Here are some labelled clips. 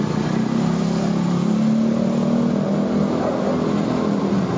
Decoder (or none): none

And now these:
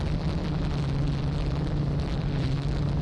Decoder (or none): none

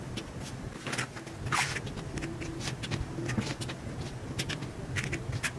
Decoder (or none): none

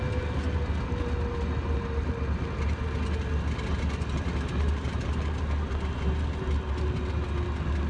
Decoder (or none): none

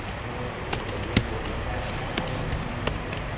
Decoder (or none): none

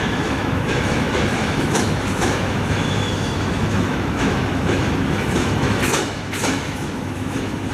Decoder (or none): autoencoder, DAC-VAE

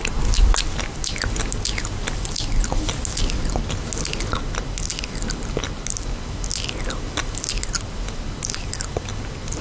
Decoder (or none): none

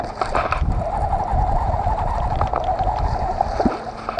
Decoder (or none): none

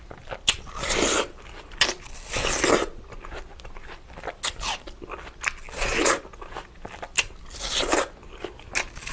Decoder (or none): none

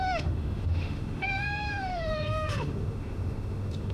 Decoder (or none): autoencoder, DAC-VAE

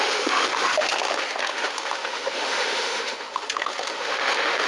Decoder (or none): autoencoder, DAC-VAE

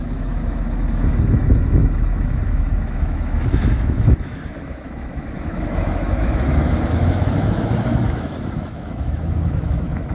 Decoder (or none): autoencoder, DAC-VAE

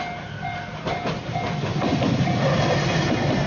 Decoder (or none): none